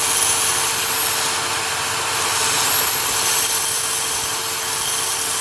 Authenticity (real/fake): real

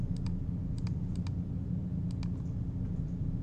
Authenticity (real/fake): real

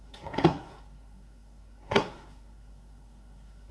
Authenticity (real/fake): fake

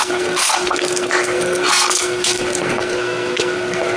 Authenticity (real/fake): fake